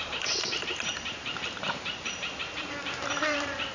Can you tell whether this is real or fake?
fake